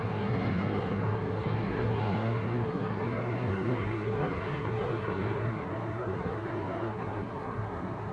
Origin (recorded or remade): remade